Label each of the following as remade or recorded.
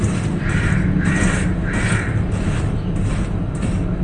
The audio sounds recorded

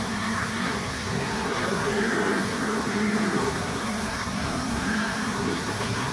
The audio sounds remade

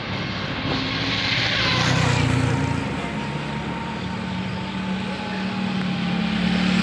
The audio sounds recorded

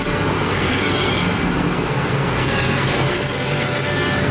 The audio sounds remade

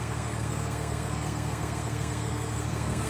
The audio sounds remade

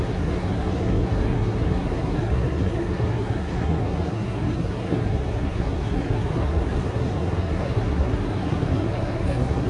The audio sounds remade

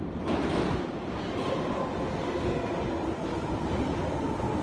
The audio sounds recorded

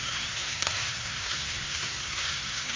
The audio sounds remade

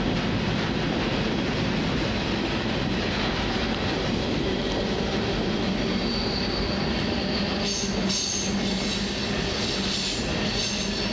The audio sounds recorded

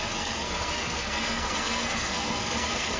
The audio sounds remade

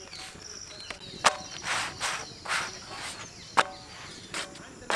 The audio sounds recorded